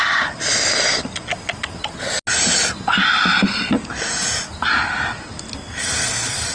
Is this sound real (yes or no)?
yes